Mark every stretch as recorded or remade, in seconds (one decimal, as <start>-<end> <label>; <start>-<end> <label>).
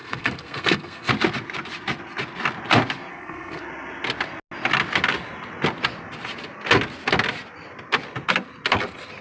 0.0-1.1 remade; 1.1-3.1 recorded; 3.1-3.6 remade; 3.6-9.2 recorded